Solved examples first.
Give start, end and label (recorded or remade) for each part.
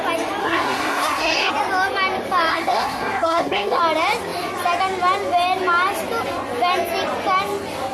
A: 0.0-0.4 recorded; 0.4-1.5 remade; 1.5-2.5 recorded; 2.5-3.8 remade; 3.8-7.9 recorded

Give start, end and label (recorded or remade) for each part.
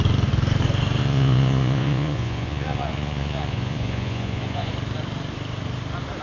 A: 0.0-1.0 recorded; 1.0-4.7 remade; 4.7-6.2 recorded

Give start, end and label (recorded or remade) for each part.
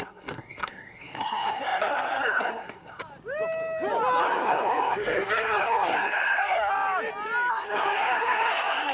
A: 0.0-3.0 remade; 3.0-4.2 recorded; 4.2-6.7 remade; 6.7-7.5 recorded; 7.5-8.9 remade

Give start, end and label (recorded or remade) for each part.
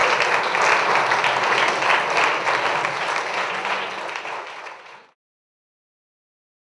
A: 0.0-3.4 recorded; 3.4-3.9 remade; 3.9-4.6 recorded; 4.6-6.7 remade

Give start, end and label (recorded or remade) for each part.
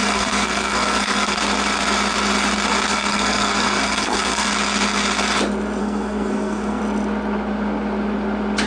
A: 0.0-1.4 remade; 1.4-2.9 recorded; 2.9-4.5 remade; 4.5-5.8 recorded; 5.8-6.8 remade; 6.8-8.7 recorded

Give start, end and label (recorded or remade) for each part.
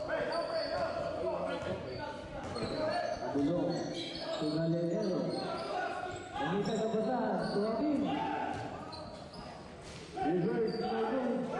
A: 0.0-11.6 recorded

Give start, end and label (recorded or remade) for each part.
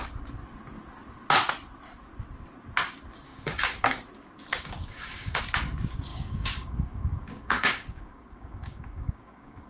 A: 0.0-3.3 recorded; 3.3-4.0 remade; 4.0-4.5 recorded; 4.5-5.4 remade; 5.4-6.1 recorded; 6.1-9.7 remade